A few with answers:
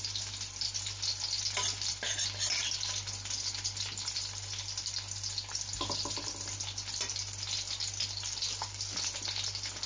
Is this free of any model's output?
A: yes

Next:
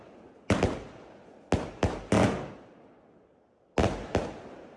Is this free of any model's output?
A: yes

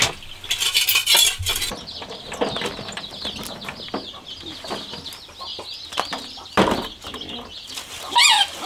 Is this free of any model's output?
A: yes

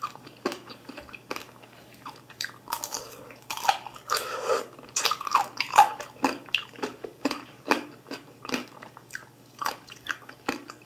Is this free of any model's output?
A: no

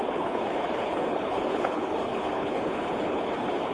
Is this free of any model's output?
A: no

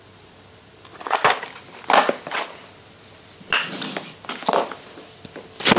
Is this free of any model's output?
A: yes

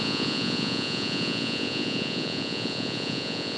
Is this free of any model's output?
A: no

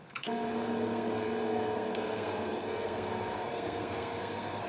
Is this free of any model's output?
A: no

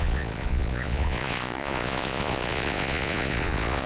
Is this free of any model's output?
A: no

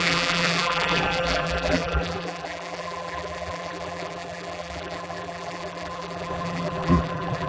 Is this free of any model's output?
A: no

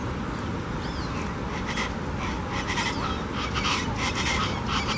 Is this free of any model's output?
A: yes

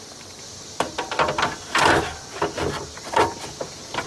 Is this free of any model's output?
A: yes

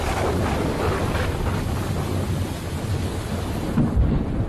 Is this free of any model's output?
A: yes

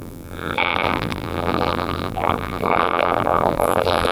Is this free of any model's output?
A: no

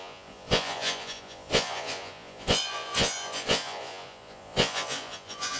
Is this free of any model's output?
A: no